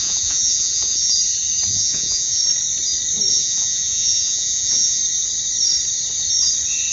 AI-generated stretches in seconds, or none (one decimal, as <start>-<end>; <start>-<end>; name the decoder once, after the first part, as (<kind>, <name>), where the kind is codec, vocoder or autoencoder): 0.0-1.2 (vocoder, Vocos); 1.7-2.4; 3.3-5.0